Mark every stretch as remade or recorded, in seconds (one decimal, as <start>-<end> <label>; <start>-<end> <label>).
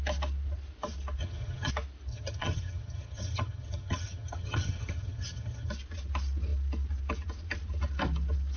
0.0-1.2 recorded; 1.2-1.7 remade; 1.7-2.1 recorded; 2.1-5.7 remade; 5.7-8.6 recorded